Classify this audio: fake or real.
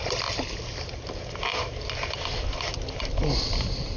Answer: real